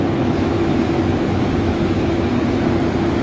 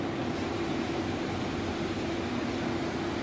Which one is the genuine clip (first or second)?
second